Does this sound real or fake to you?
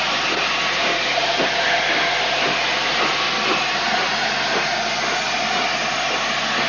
real